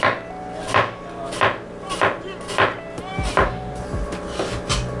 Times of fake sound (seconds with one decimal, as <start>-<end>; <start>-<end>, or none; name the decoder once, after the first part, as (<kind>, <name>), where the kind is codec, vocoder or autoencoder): 3.1-3.8 (vocoder, BigVGAN v2)